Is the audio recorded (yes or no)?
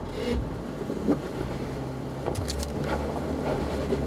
yes